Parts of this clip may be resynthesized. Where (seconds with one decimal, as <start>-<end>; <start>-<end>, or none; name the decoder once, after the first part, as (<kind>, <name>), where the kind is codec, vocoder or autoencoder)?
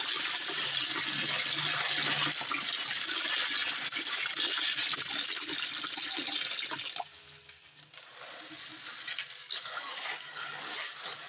9.4-11.3 (codec, DAC)